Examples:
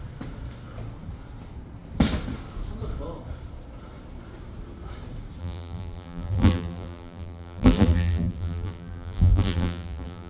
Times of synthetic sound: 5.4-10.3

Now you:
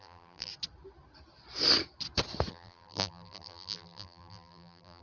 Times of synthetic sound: 0.0-0.5; 2.5-5.0

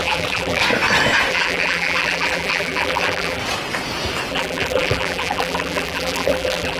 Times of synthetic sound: 0.0-0.6; 1.3-3.4; 4.3-6.8

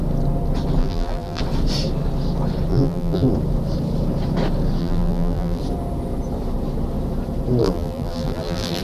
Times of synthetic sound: 0.8-1.4; 2.7-3.3; 4.8-5.6; 7.6-8.8